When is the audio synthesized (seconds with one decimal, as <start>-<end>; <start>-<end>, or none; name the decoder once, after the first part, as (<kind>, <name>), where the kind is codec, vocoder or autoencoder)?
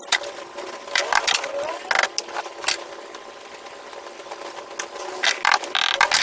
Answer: none